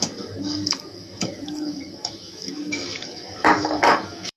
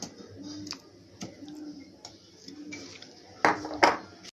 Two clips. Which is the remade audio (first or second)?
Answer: first